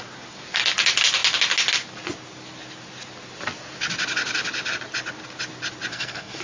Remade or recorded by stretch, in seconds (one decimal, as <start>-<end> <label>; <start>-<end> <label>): 0.0-5.9 recorded; 5.9-6.4 remade

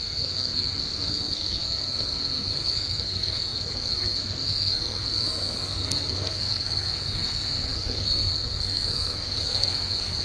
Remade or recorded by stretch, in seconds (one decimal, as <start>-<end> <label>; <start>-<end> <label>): 0.0-10.2 remade

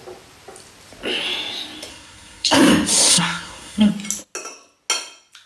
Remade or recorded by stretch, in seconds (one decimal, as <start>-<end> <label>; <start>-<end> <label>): 0.0-1.9 recorded; 1.9-2.7 remade; 2.7-3.1 recorded; 3.1-3.9 remade; 3.9-5.5 recorded

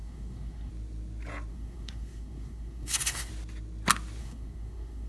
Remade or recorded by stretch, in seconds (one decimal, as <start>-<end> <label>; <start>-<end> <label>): 0.0-0.7 remade; 0.7-1.5 recorded; 1.5-3.3 remade; 3.3-4.2 recorded; 4.2-5.1 remade

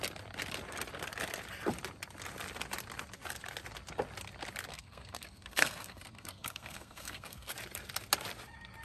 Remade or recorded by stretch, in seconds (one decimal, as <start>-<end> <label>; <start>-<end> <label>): 0.0-4.7 recorded; 4.7-7.5 remade; 7.5-8.8 recorded

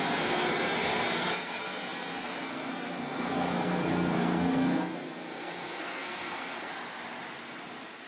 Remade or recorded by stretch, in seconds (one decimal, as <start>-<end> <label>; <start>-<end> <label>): 0.0-6.7 remade; 6.7-8.1 recorded

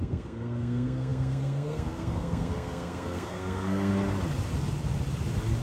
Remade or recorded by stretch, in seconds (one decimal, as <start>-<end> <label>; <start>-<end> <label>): 0.0-3.9 remade; 3.9-5.6 recorded